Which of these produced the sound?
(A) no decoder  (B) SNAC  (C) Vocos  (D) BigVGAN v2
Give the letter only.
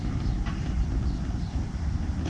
D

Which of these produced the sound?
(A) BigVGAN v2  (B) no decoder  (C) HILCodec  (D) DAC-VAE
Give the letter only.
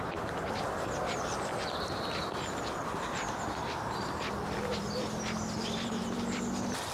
A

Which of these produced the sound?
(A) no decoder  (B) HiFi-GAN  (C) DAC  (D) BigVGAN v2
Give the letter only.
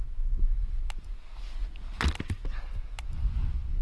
A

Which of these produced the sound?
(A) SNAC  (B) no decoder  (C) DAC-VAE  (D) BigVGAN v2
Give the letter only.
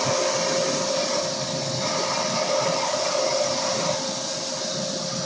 B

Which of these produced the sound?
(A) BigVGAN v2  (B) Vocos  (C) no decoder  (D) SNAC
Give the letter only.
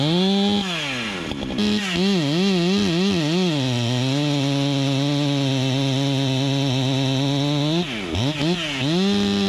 C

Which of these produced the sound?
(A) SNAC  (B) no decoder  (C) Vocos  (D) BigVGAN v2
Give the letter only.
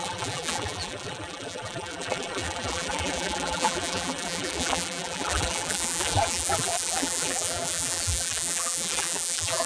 D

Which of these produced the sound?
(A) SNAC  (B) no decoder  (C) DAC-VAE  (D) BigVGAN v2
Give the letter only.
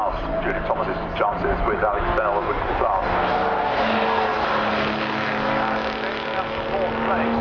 B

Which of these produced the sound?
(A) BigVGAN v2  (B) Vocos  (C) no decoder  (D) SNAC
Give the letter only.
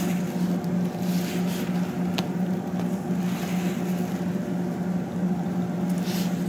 C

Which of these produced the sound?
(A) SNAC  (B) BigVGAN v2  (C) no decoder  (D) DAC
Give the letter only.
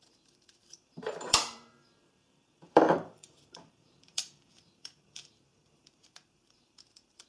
B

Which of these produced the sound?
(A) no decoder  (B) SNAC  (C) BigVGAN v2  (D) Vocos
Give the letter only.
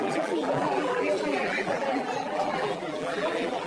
C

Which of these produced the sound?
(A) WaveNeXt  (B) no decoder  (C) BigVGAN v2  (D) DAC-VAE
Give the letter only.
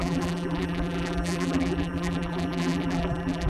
C